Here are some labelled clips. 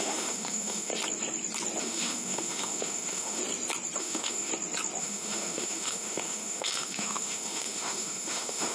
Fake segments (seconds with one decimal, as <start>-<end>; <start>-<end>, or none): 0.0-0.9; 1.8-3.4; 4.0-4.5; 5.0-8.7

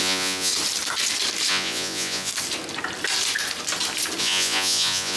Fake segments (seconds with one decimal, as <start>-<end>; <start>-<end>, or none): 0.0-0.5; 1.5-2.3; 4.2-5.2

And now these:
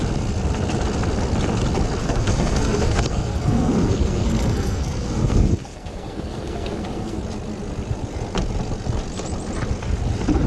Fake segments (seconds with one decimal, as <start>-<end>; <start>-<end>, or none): 2.0-7.2